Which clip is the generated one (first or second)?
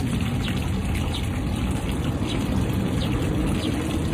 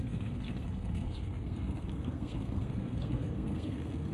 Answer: second